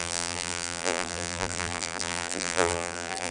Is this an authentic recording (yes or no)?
no